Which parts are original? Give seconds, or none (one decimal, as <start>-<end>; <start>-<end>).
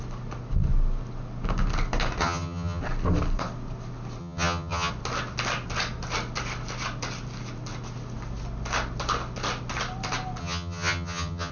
0.0-2.2; 2.8-4.2; 4.9-10.4